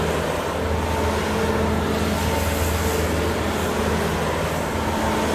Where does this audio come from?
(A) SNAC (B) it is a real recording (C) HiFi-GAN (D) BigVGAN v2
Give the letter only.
B